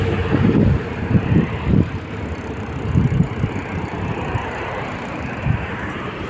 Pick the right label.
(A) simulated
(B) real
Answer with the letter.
A